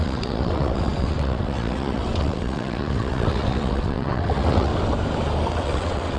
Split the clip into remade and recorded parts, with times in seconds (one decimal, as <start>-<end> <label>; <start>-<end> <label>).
0.0-4.7 remade; 4.7-5.5 recorded; 5.5-6.2 remade